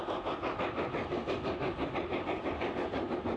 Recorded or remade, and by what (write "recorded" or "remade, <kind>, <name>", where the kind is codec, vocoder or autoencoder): recorded